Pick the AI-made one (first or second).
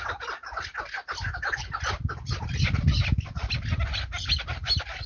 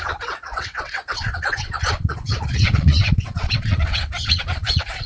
second